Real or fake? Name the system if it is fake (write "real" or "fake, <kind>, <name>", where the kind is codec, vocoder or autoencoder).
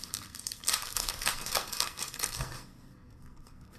fake, codec, SNAC